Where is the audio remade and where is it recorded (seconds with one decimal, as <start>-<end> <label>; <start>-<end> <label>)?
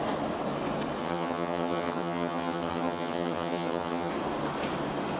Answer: 0.0-1.0 recorded; 1.0-4.1 remade; 4.1-5.2 recorded